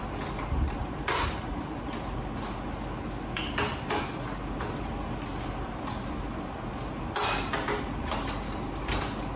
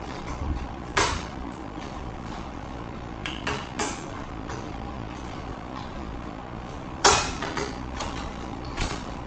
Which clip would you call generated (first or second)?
second